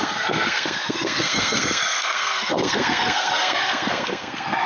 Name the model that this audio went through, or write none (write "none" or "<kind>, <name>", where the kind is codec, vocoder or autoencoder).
codec, SNAC